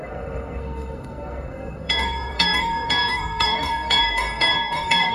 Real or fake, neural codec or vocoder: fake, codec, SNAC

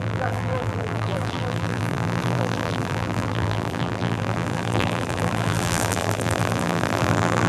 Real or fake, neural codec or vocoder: fake, vocoder, BigVGAN v2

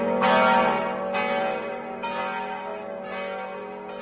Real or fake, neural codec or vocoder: real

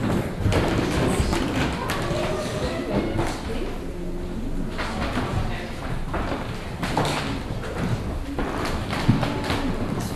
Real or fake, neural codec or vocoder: real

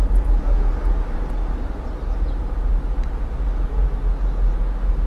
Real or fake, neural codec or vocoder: real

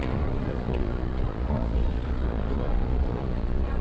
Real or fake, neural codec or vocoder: fake, vocoder, Vocos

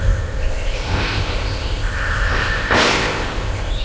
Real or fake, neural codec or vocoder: fake, codec, ZipCodec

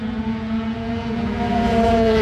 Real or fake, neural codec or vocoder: fake, vocoder, Vocos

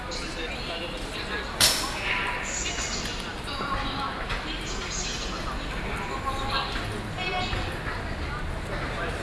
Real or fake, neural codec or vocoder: real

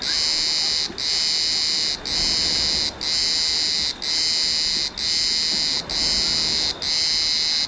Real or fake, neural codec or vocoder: real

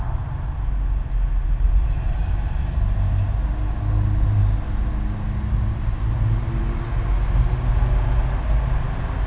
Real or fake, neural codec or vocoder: real